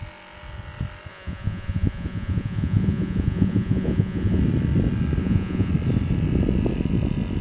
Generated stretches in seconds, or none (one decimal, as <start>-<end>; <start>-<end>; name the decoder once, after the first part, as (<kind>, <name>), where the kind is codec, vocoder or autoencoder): 1.1-4.4 (vocoder, Vocos); 5.2-5.7